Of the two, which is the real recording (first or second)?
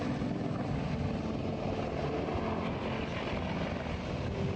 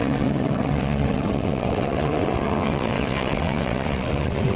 first